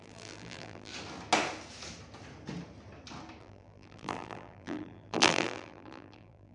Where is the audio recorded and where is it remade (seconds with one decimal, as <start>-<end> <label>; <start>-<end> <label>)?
0.0-0.9 remade; 0.9-3.4 recorded; 3.4-6.5 remade

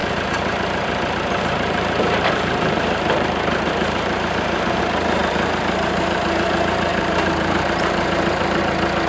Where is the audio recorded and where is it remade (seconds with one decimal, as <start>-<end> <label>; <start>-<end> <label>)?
0.0-4.8 remade; 4.8-5.2 recorded; 5.2-6.0 remade; 6.0-6.9 recorded; 6.9-8.6 remade; 8.6-9.1 recorded

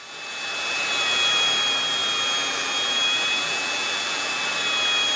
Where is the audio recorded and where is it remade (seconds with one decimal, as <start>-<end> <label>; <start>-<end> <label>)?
0.0-2.0 recorded; 2.0-4.3 remade; 4.3-5.2 recorded

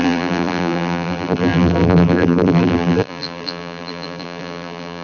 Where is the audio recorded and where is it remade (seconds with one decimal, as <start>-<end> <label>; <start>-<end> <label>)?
0.0-5.0 remade

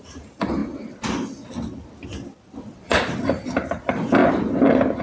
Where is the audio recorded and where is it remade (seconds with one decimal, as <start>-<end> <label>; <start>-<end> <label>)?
0.0-0.6 remade; 0.6-2.8 recorded; 2.8-4.2 remade; 4.2-5.0 recorded

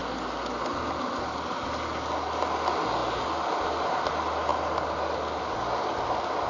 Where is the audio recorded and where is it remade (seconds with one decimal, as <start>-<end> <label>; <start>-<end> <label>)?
0.0-4.5 recorded; 4.5-5.4 remade; 5.4-6.5 recorded